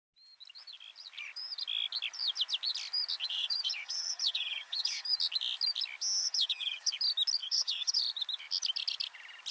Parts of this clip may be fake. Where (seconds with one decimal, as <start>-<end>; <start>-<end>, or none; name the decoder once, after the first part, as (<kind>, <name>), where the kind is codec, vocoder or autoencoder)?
3.2-5.1 (vocoder, HiFi-GAN); 6.2-6.9; 7.4-8.0